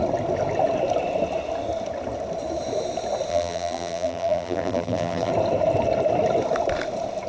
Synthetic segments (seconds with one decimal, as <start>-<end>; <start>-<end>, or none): 3.3-5.3